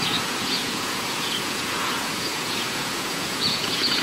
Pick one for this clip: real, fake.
fake